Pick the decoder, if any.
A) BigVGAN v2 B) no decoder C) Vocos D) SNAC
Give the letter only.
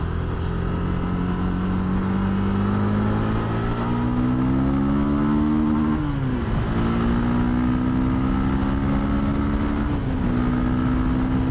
B